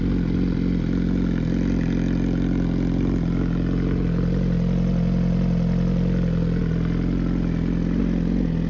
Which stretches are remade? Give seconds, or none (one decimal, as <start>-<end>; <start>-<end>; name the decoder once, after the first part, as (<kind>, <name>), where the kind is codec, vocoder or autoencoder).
none